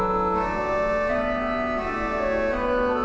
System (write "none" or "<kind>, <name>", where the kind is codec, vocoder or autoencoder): none